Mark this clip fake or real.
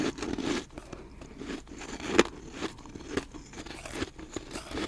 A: real